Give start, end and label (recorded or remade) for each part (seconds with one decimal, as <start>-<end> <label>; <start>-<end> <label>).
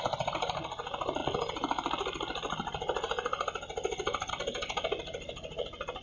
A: 0.0-6.0 recorded